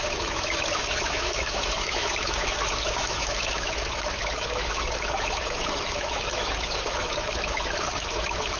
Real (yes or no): no